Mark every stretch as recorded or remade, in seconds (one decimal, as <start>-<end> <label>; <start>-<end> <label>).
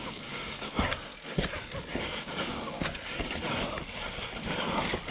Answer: 0.0-1.1 remade; 1.1-2.0 recorded; 2.0-3.0 remade; 3.0-5.1 recorded